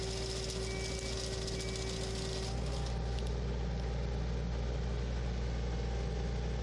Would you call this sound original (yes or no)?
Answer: yes